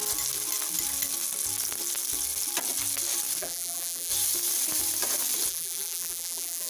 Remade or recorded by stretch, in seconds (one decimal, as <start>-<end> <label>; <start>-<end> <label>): 0.0-3.4 recorded; 3.4-4.1 remade; 4.1-5.5 recorded; 5.5-6.7 remade